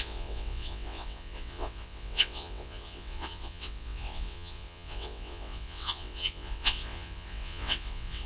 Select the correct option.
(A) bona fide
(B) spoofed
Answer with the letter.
B